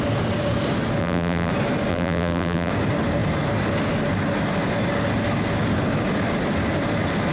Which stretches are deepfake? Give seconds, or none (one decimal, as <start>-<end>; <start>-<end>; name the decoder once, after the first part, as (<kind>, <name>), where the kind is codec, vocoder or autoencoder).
1.0-1.5 (vocoder, BigVGAN v2); 1.9-2.7